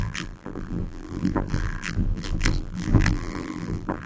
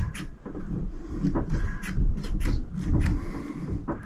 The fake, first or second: first